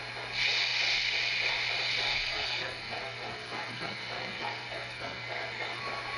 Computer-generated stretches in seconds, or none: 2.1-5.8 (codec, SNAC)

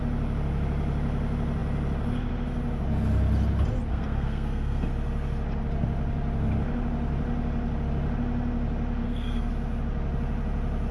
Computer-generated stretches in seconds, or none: 3.9-4.9 (codec, SNAC); 9.0-9.5